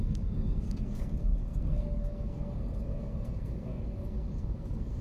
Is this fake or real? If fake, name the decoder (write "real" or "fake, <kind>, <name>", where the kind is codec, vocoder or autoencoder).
fake, codec, SNAC